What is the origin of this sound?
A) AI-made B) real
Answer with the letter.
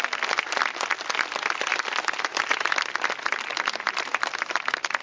B